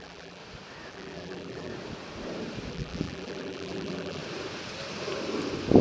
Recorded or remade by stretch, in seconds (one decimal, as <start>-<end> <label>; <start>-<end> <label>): 0.0-0.4 remade; 0.4-0.9 recorded; 0.9-1.7 remade; 1.7-2.7 recorded; 2.7-4.2 remade; 4.2-5.8 recorded